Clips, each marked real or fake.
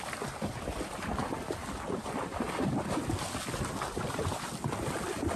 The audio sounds real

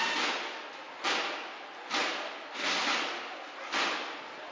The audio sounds real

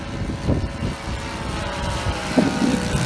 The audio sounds fake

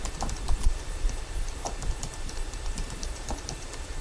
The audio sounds fake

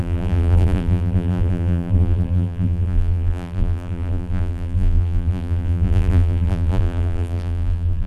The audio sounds fake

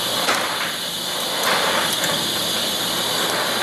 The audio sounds real